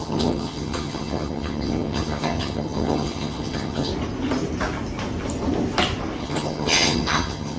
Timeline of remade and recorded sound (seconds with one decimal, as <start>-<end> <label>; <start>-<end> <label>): 0.0-3.9 remade; 3.9-6.2 recorded; 6.2-7.6 remade